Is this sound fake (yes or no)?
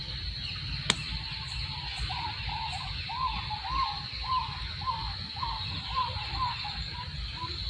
no